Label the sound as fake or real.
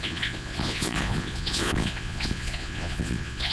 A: fake